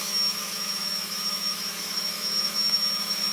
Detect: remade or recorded remade